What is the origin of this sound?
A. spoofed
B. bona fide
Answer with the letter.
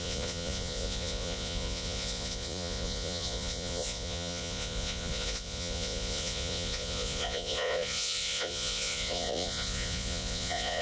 A